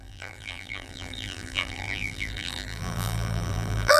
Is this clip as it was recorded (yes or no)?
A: no